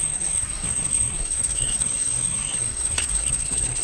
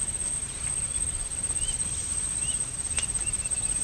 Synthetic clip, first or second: first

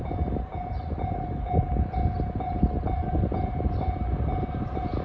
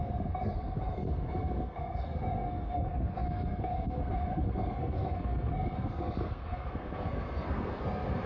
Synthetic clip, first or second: second